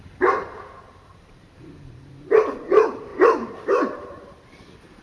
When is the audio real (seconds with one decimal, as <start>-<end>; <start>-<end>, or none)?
none